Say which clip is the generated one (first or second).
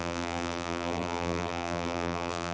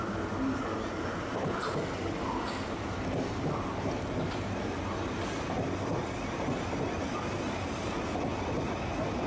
first